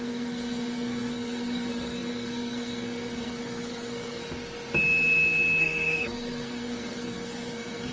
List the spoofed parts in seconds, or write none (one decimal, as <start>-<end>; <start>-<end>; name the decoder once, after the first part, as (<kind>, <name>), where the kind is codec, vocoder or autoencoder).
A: 0.0-4.2 (codec, SNAC); 5.6-7.9